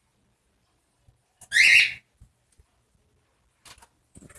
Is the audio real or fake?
real